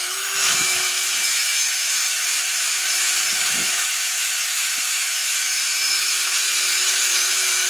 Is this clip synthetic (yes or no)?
yes